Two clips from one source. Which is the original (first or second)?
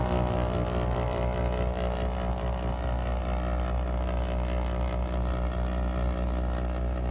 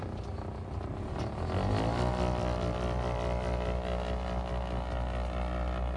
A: second